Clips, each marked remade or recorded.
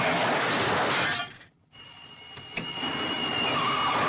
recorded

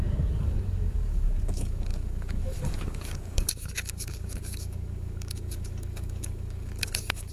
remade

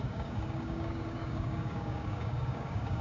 remade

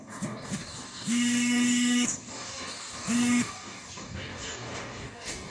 remade